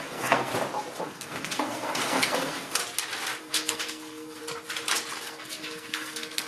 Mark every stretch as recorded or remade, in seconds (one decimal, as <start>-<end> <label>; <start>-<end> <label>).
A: 0.0-0.5 remade; 0.5-1.0 recorded; 1.0-2.8 remade; 2.8-3.4 recorded; 3.4-4.4 remade; 4.4-5.2 recorded; 5.2-6.5 remade